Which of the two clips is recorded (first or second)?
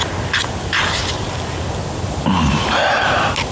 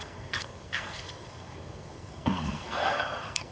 first